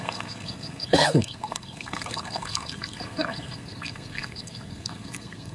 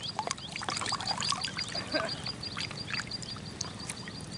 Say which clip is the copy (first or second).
first